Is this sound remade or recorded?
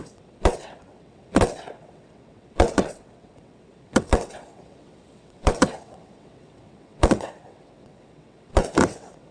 remade